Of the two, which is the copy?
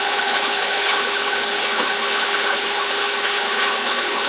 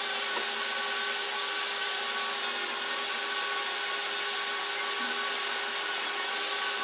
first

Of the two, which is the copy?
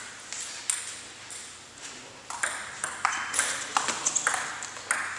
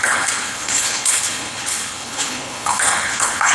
second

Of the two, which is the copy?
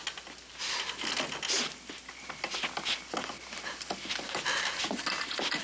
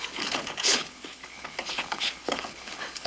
second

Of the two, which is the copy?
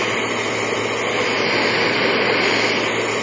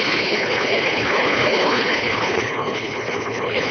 second